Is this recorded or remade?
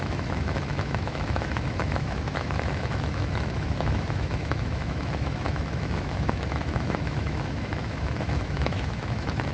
remade